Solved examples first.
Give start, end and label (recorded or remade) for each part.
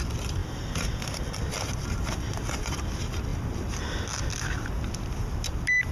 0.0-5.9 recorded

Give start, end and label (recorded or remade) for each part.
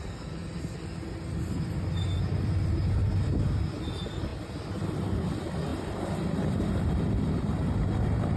0.0-5.7 recorded; 5.7-8.4 remade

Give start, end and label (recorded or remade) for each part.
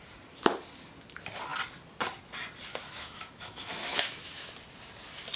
0.0-2.7 recorded; 2.7-4.5 remade; 4.5-5.4 recorded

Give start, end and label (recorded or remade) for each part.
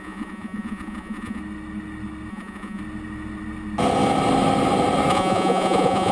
0.0-1.4 remade; 1.4-2.3 recorded; 2.3-2.8 remade; 2.8-5.1 recorded; 5.1-6.1 remade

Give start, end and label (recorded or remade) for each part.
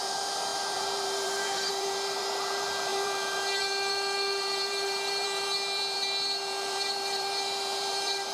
0.0-8.3 remade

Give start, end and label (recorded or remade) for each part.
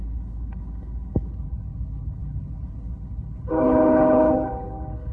0.0-5.1 remade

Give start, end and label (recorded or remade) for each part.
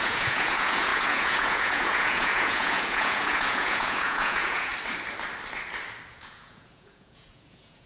0.0-4.7 remade; 4.7-6.1 recorded; 6.1-7.9 remade